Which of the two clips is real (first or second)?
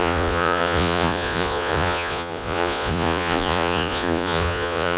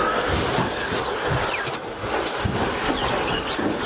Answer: second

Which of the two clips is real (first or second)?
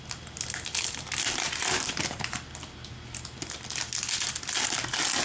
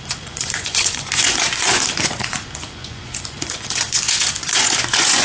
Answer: first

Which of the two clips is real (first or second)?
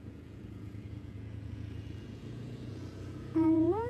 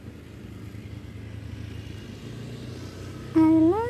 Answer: second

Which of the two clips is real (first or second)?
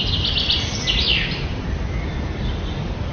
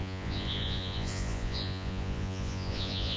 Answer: first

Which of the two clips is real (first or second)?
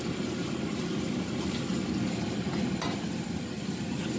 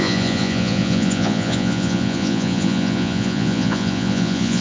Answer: first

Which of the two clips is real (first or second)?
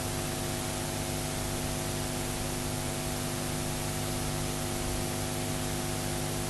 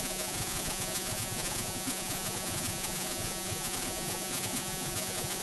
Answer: first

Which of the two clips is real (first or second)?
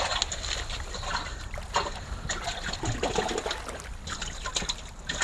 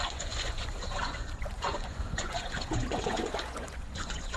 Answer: first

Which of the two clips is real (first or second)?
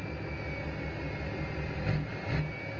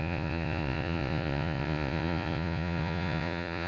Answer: first